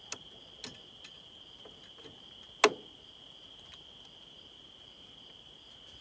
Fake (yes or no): no